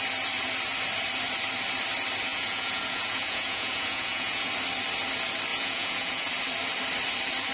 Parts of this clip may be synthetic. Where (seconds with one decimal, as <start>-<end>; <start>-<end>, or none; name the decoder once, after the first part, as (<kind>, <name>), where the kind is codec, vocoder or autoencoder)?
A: 2.3-4.5 (vocoder, Vocos); 5.5-6.3